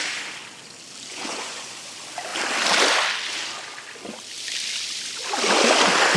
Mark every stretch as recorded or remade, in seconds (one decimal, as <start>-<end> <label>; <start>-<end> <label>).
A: 0.0-1.1 recorded; 1.1-1.9 remade; 1.9-6.2 recorded